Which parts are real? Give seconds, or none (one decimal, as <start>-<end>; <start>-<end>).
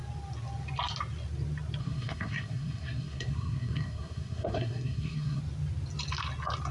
0.0-1.8; 5.4-6.7